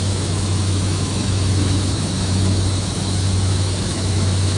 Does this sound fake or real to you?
fake